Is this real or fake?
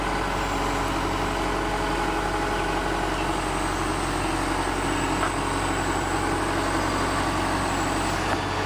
real